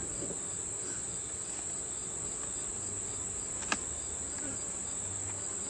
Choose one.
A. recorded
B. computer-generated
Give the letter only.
A